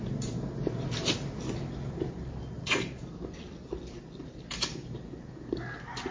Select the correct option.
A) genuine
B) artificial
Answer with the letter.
A